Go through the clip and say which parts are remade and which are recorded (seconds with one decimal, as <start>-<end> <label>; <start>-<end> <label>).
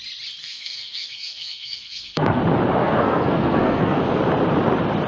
0.0-0.4 recorded; 0.4-2.4 remade; 2.4-2.8 recorded; 2.8-4.0 remade; 4.0-5.1 recorded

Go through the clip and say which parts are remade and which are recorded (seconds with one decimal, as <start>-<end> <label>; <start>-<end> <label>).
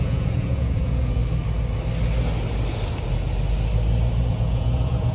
0.0-1.2 remade; 1.2-4.3 recorded; 4.3-5.1 remade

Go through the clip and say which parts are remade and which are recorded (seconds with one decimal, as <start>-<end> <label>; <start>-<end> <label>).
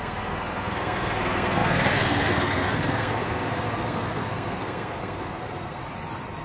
0.0-5.8 remade; 5.8-6.4 recorded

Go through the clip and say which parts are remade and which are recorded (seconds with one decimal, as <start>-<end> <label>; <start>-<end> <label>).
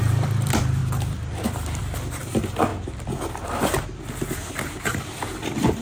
0.0-0.8 remade; 0.8-1.8 recorded; 1.8-2.7 remade; 2.7-5.3 recorded; 5.3-5.8 remade